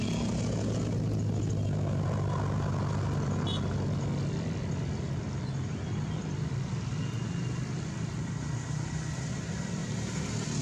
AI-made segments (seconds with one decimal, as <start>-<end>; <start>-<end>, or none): none